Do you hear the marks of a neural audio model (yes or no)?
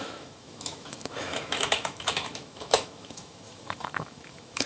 yes